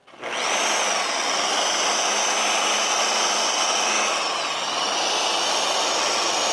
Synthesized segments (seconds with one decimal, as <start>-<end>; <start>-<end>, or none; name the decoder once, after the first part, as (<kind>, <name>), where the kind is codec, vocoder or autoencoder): none